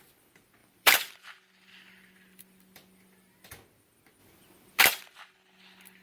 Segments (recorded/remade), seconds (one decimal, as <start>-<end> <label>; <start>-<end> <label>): 0.0-0.6 recorded; 0.6-3.5 remade; 3.5-4.2 recorded; 4.2-4.8 remade; 4.8-6.0 recorded